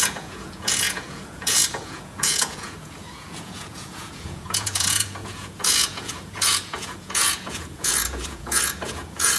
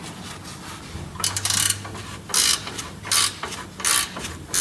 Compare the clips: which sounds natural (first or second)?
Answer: second